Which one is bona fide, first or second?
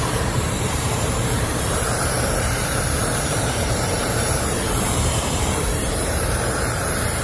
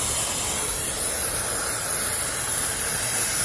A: second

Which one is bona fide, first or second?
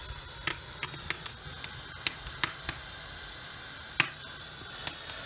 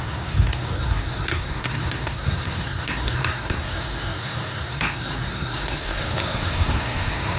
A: first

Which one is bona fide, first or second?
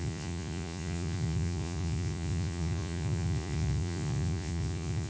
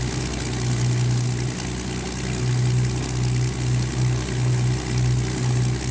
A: second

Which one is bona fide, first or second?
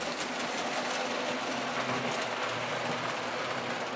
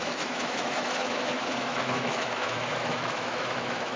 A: first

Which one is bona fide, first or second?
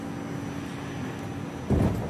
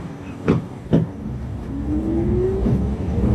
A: first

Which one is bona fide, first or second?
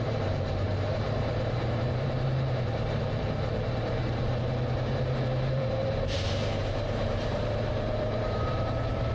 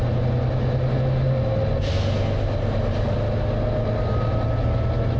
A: second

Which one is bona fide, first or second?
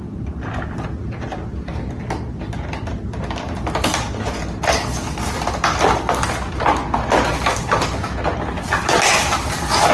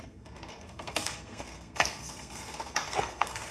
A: first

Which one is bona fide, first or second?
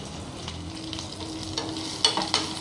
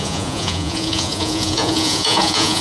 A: first